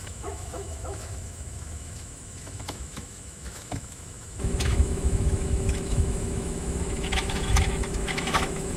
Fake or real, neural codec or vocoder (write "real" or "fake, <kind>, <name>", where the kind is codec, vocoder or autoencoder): fake, autoencoder, DAC-VAE